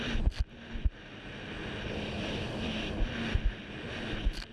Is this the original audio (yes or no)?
yes